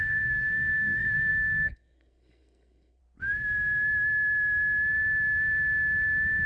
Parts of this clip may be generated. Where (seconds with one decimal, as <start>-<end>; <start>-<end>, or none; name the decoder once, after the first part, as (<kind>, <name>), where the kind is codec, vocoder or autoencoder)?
0.0-3.0 (codec, SNAC)